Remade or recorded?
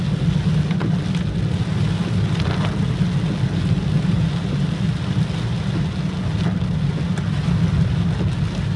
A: recorded